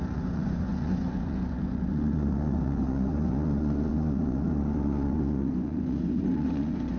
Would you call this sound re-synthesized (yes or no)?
yes